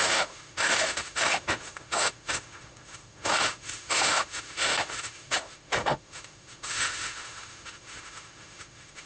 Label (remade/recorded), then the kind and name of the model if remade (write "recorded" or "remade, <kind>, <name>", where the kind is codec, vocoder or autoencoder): remade, autoencoder, DAC-VAE